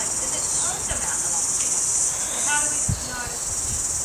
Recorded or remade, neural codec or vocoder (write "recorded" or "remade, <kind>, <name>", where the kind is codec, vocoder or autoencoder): recorded